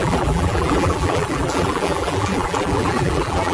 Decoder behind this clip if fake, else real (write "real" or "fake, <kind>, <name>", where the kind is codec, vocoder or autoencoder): fake, vocoder, BigVGAN v2